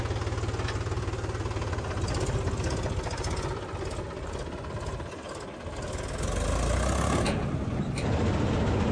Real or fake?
real